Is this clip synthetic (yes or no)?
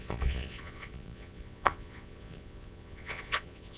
yes